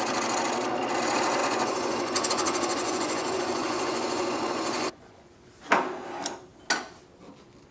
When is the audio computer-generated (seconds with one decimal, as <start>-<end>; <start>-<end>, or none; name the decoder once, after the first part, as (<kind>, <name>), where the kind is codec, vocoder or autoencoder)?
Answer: 1.4-5.5 (vocoder, Vocos)